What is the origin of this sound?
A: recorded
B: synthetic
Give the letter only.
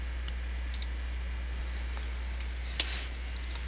A